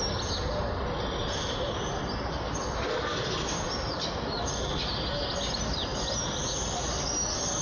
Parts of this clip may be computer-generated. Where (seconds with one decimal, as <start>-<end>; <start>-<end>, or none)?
none